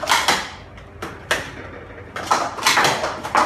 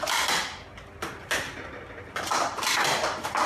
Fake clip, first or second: second